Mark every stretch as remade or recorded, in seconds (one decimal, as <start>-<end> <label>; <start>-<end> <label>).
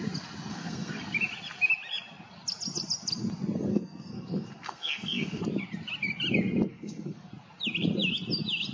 0.0-0.5 recorded; 0.5-1.0 remade; 1.0-3.7 recorded; 3.7-5.4 remade; 5.4-6.7 recorded; 6.7-7.3 remade; 7.3-8.7 recorded